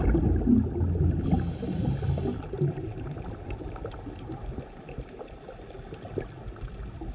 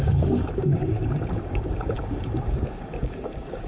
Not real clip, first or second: second